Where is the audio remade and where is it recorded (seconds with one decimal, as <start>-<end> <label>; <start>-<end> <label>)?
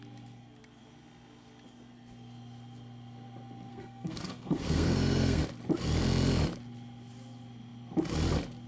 0.0-3.7 recorded; 3.7-5.4 remade; 5.4-8.7 recorded